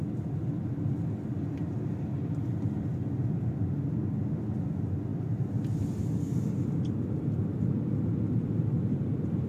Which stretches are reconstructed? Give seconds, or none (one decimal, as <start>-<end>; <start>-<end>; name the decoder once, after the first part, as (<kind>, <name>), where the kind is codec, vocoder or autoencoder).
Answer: none

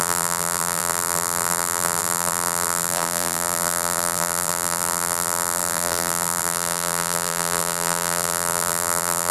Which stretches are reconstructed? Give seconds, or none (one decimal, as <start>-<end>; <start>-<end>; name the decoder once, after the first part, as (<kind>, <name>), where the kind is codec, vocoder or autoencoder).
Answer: 0.0-9.3 (vocoder, BigVGAN v2)